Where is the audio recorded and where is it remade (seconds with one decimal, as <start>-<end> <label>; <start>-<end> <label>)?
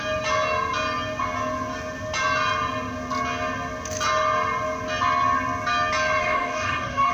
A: 0.0-6.2 recorded; 6.2-7.1 remade